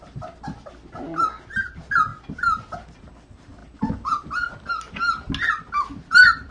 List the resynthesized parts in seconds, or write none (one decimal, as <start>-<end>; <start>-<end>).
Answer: none